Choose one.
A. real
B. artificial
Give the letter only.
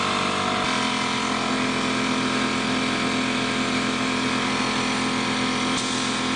A